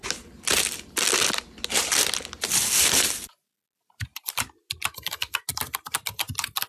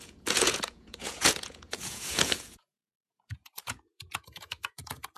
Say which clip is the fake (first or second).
second